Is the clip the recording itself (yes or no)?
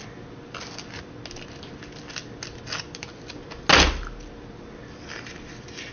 yes